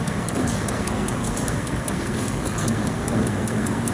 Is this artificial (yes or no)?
yes